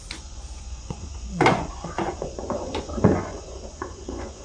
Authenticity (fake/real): fake